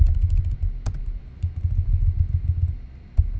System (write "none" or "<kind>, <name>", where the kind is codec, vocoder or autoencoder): none